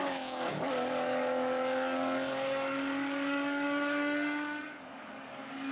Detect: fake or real fake